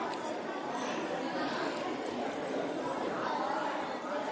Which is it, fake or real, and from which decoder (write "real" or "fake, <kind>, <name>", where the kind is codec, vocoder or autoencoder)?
fake, vocoder, BigVGAN v2